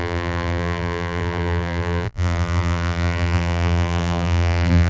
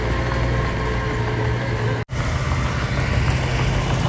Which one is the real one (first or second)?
second